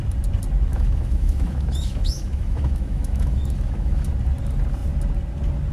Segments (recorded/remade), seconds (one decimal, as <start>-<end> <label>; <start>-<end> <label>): 0.0-0.7 recorded; 0.7-4.1 remade; 4.1-5.7 recorded